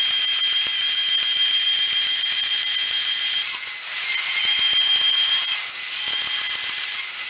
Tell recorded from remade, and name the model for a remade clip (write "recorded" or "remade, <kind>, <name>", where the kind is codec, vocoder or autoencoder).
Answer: recorded